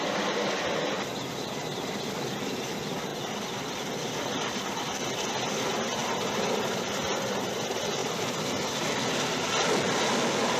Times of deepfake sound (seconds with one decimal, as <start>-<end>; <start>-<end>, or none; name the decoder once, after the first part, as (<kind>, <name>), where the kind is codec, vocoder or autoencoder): 3.1-4.9 (vocoder, BigVGAN v2); 8.0-8.8